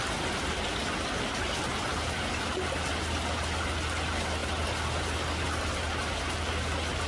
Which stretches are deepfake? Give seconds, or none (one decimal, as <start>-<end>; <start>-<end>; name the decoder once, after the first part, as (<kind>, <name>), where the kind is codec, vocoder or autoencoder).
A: none